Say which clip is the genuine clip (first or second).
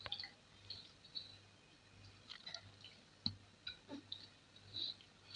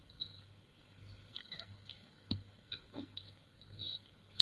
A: first